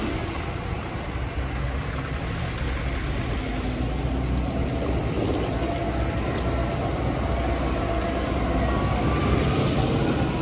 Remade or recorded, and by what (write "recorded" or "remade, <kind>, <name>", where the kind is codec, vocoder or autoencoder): recorded